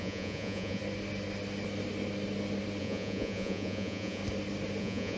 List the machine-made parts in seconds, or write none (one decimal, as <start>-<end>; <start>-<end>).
0.0-0.8; 2.8-4.2; 4.8-5.2